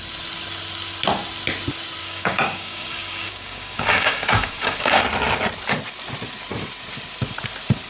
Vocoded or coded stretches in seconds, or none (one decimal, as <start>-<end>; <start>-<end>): 2.0-5.0